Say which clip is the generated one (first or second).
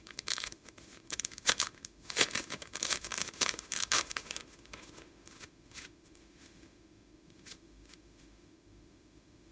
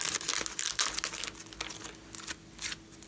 first